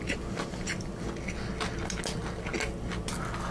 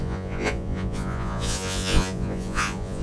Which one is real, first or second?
first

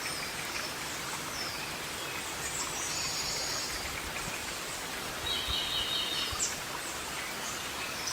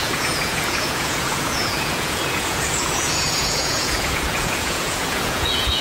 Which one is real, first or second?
first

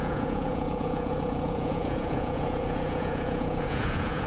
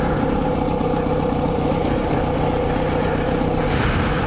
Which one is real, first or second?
second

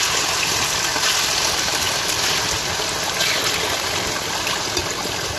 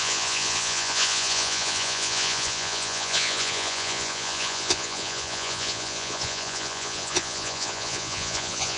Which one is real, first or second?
first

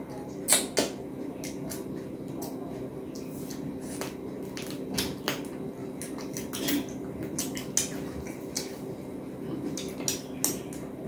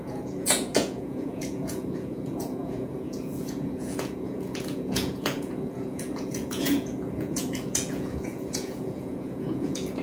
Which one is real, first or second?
first